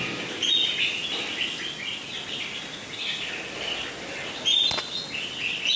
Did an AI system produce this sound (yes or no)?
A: no